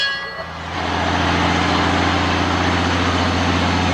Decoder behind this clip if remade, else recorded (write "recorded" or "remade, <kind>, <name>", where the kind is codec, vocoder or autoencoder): recorded